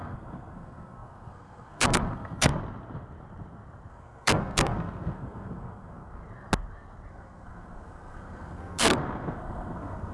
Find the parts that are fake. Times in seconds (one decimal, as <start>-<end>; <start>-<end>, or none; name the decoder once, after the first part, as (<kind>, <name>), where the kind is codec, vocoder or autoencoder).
0.0-2.5 (codec, SNAC); 3.9-6.2; 7.1-10.1